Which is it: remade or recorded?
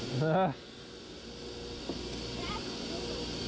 recorded